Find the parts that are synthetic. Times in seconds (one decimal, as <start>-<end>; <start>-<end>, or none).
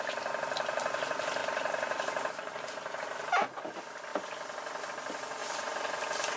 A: 1.4-2.7; 5.4-6.4